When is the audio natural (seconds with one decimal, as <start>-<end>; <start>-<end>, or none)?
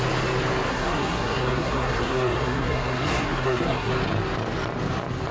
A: 0.0-0.7; 3.9-5.3